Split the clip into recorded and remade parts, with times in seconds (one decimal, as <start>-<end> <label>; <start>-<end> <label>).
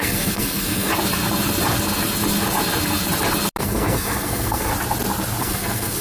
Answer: 0.0-0.9 remade; 0.9-3.6 recorded; 3.6-4.7 remade; 4.7-5.4 recorded; 5.4-6.0 remade